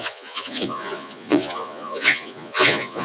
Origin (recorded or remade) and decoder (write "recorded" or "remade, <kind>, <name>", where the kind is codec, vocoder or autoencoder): remade, vocoder, Vocos